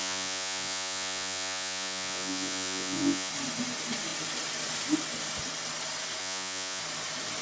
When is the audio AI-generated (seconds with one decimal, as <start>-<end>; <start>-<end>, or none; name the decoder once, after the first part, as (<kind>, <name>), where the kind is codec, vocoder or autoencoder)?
0.0-3.3 (vocoder, Vocos); 6.2-6.8